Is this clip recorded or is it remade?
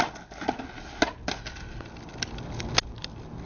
recorded